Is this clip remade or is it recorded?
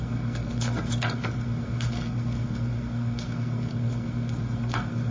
remade